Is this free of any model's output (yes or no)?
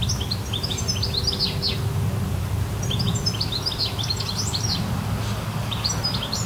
yes